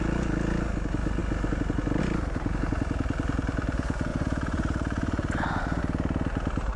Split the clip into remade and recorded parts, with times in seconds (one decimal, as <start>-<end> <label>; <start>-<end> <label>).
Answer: 0.0-4.1 recorded; 4.1-5.8 remade; 5.8-6.8 recorded